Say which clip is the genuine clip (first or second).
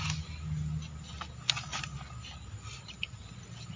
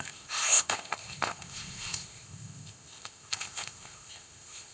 first